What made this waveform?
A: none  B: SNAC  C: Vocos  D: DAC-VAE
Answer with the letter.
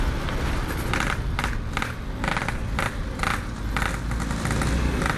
A